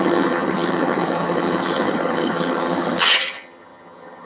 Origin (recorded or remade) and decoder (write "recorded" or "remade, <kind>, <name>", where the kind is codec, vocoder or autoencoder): remade, vocoder, HiFi-GAN